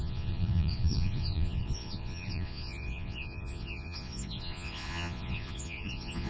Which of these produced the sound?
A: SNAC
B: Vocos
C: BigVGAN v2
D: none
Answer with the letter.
B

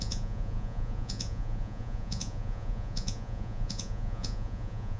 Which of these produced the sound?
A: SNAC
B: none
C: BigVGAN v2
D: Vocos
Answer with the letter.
D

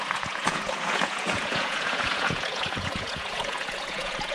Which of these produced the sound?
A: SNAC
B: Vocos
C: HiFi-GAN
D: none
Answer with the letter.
B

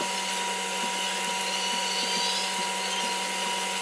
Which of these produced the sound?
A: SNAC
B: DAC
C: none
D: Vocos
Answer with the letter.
C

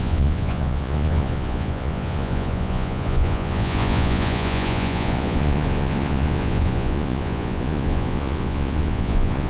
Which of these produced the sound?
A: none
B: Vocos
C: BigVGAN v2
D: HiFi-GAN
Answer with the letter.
B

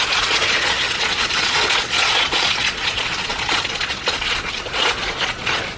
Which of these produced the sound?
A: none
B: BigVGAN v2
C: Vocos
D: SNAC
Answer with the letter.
C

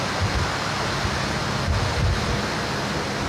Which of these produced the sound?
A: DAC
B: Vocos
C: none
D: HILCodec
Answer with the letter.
C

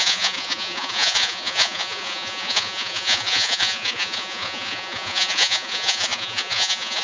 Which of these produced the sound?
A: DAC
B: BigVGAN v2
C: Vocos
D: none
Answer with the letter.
C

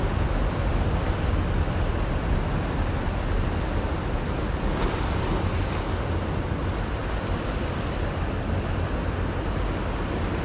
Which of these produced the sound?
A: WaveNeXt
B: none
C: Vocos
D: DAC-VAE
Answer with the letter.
B